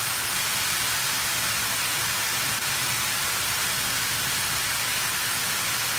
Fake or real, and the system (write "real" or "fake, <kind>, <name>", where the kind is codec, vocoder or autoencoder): real